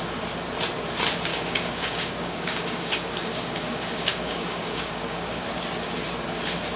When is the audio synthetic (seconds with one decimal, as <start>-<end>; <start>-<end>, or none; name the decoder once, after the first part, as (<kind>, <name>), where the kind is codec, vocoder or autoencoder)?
1.3-5.4 (codec, DAC)